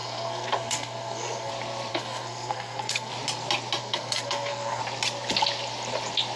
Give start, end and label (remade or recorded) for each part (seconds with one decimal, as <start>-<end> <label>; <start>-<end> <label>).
0.0-1.5 remade; 1.5-1.9 recorded; 1.9-3.1 remade; 3.1-3.8 recorded; 3.8-4.8 remade; 4.8-6.4 recorded